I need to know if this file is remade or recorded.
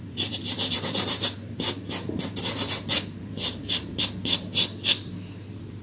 remade